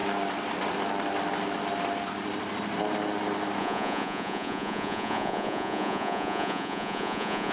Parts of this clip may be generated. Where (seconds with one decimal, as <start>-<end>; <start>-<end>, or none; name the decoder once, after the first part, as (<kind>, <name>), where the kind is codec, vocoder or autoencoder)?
3.6-7.5 (vocoder, Vocos)